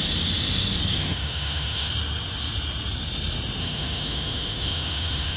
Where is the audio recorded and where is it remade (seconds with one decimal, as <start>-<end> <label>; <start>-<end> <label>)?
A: 0.0-1.0 recorded; 1.0-1.9 remade; 1.9-3.6 recorded; 3.6-5.4 remade